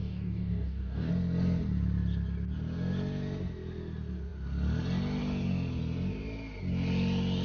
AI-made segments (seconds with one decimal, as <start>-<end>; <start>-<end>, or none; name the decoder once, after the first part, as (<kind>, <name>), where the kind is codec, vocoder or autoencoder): 0.0-1.1 (codec, DAC)